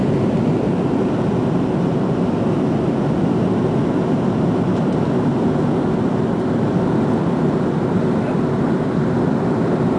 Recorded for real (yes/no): yes